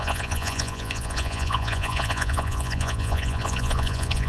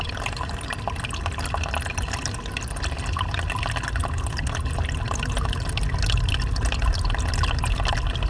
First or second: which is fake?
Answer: first